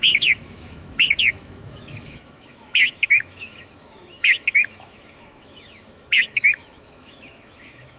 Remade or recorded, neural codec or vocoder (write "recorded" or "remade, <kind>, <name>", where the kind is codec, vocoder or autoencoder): remade, autoencoder, DAC-VAE